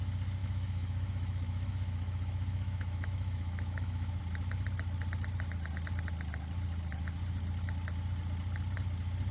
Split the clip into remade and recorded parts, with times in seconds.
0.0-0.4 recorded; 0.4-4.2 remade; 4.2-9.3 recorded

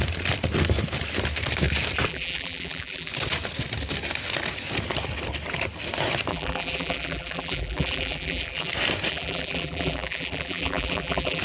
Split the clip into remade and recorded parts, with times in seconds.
0.0-2.1 recorded; 2.1-3.1 remade; 3.1-6.3 recorded; 6.3-8.7 remade; 8.7-9.1 recorded; 9.1-11.4 remade

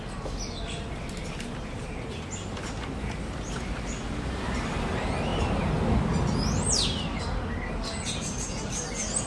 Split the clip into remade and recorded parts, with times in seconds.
0.0-9.3 recorded